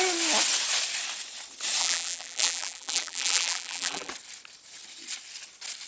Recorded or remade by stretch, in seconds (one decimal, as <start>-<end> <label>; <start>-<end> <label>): 0.0-1.8 recorded; 1.8-4.1 remade; 4.1-5.9 recorded